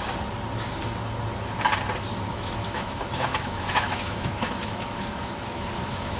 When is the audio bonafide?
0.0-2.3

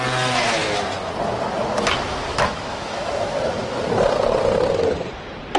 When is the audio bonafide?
0.0-2.3; 3.4-5.6

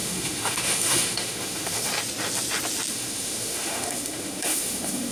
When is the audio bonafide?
1.9-2.9

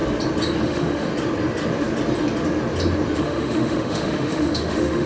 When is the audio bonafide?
0.0-0.6; 1.1-3.2

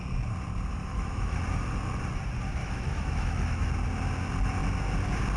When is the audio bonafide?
0.0-0.7; 1.4-2.6; 3.7-5.4

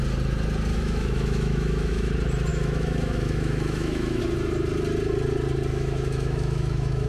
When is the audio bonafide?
0.0-0.7; 2.1-2.5; 4.2-5.7